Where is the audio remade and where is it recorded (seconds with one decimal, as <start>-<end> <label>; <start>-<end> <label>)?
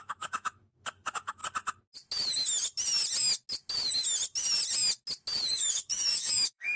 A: 0.0-1.4 remade; 1.4-5.5 recorded; 5.5-6.8 remade